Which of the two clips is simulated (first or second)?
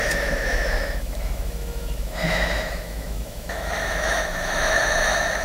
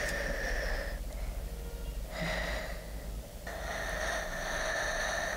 first